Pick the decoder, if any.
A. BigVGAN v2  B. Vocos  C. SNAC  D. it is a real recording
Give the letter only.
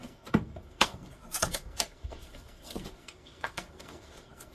C